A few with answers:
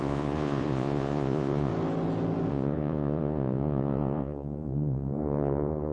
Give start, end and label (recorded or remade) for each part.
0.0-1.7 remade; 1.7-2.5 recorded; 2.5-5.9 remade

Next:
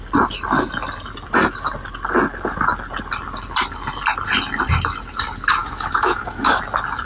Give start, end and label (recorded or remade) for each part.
0.0-5.6 recorded; 5.6-6.6 remade; 6.6-7.1 recorded

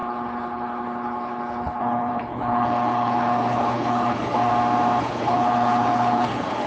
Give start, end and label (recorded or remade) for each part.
0.0-4.5 remade; 4.5-5.0 recorded; 5.0-6.7 remade

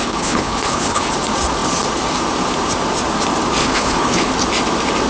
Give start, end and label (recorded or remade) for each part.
0.0-1.1 remade; 1.1-3.6 recorded; 3.6-4.3 remade; 4.3-5.1 recorded

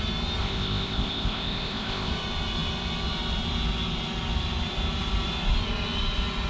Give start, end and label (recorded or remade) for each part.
0.0-0.4 recorded; 0.4-2.1 remade; 2.1-6.5 recorded